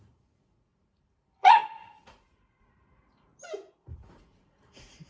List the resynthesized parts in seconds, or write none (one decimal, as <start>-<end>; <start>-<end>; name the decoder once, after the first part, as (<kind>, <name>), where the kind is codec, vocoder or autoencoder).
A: 0.0-3.3 (vocoder, Vocos); 3.8-5.1